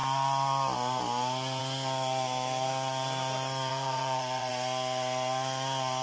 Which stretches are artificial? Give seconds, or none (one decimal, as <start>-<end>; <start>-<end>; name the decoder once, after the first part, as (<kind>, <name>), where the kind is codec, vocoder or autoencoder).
3.7-4.5 (vocoder, Vocos)